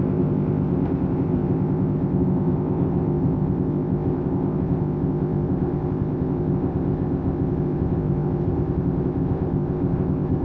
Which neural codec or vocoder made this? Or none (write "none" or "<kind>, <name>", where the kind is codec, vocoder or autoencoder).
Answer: codec, ZipCodec